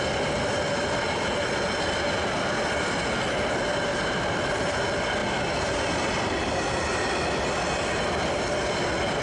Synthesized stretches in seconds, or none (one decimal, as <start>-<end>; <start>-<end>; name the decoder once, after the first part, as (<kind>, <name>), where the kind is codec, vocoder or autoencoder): none